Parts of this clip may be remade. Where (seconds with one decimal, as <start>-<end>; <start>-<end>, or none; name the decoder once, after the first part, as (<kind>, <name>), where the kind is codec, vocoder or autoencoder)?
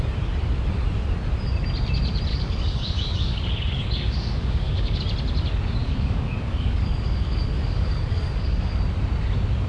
2.3-5.0 (codec, DAC); 5.8-8.8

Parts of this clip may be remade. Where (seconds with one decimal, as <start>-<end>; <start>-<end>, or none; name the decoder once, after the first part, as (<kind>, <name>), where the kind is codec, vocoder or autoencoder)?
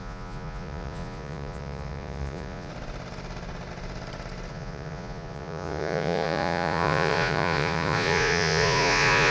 0.0-2.7 (vocoder, Vocos); 4.5-9.3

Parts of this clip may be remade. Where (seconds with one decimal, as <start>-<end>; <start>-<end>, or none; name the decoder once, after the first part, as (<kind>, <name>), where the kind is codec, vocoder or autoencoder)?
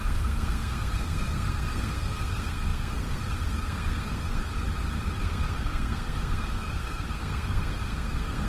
0.0-4.5 (codec, SNAC); 5.2-8.5